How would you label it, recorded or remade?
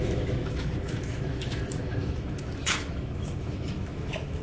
remade